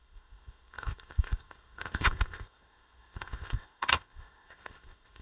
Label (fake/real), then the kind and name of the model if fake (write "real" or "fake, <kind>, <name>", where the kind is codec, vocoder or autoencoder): fake, codec, ZipCodec